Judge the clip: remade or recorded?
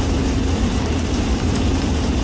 recorded